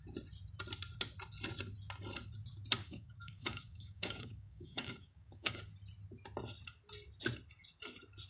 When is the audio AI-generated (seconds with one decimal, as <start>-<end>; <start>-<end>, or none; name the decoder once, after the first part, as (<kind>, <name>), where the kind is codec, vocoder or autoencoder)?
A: 2.8-5.6 (codec, DAC)